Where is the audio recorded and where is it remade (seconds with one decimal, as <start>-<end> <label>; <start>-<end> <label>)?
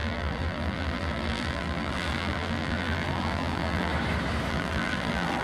0.0-3.9 remade; 3.9-4.5 recorded; 4.5-5.4 remade